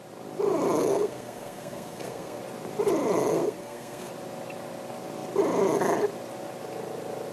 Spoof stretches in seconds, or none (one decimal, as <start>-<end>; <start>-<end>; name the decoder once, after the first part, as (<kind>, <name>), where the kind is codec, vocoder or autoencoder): 0.8-2.4 (codec, SNAC); 3.3-4.1